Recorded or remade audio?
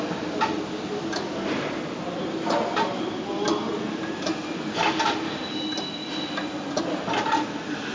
recorded